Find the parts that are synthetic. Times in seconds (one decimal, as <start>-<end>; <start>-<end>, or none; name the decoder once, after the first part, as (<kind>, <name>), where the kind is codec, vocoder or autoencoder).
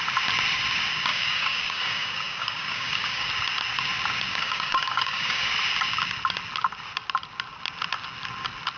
1.1-3.3 (codec, DAC); 4.3-5.5